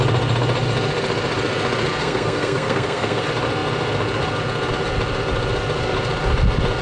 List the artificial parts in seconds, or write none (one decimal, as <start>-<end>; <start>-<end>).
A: 2.0-3.2